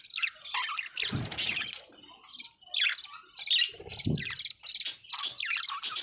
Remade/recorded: recorded